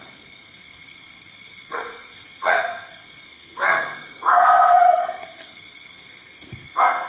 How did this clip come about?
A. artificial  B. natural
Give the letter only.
A